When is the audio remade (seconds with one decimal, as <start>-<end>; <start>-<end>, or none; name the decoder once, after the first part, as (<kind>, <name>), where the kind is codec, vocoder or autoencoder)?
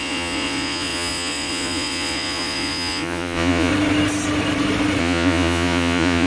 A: 0.0-3.7 (vocoder, Vocos); 5.0-6.3